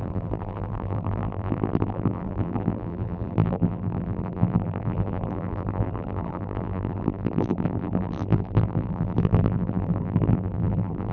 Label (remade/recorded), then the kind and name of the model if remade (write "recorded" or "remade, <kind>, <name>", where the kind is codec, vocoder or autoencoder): remade, vocoder, BigVGAN v2